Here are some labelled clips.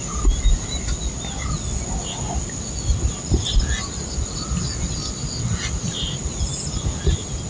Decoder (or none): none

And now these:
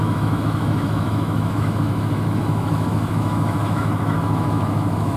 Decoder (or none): autoencoder, DAC-VAE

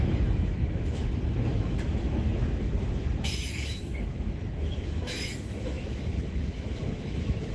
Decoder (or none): autoencoder, DAC-VAE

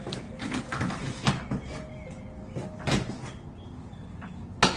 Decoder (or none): none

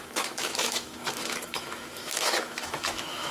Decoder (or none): autoencoder, DAC-VAE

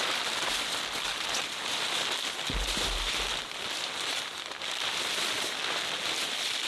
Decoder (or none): none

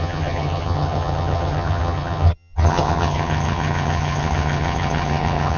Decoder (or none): vocoder, HiFi-GAN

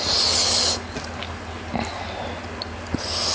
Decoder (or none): none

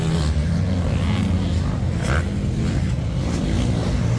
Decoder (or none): none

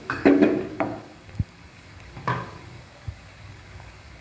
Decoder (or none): codec, DAC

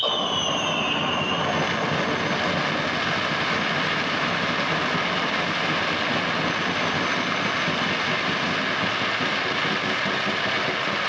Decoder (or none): none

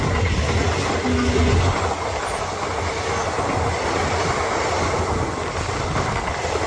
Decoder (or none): none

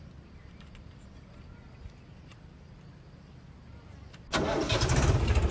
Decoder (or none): none